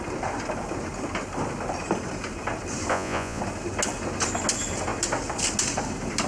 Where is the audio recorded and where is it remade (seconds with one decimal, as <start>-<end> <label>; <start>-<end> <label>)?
0.0-2.9 recorded; 2.9-3.4 remade; 3.4-6.3 recorded